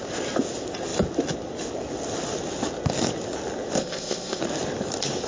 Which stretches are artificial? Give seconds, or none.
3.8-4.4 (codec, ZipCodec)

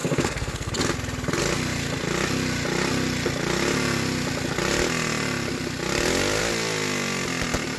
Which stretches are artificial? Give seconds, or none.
0.0-0.7 (codec, SNAC)

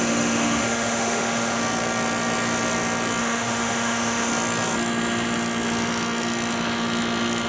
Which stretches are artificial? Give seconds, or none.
0.0-1.6 (autoencoder, DAC-VAE); 3.2-4.3

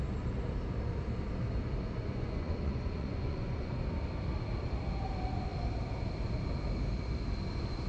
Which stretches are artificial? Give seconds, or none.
2.0-3.7 (vocoder, Vocos)